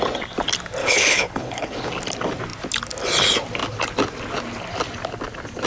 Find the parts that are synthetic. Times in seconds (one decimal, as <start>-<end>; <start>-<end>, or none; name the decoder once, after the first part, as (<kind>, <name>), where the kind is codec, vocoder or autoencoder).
0.8-1.9 (codec, HILCodec)